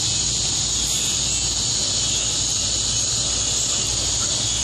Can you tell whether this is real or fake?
real